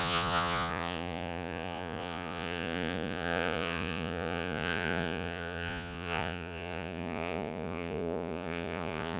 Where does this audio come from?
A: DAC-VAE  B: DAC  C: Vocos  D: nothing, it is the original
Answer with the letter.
C